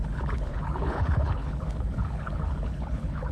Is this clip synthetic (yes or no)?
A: yes